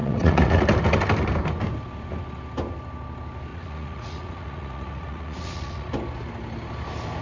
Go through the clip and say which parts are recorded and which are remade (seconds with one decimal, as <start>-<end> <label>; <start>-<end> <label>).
0.0-0.6 remade; 0.6-3.5 recorded; 3.5-5.9 remade; 5.9-7.2 recorded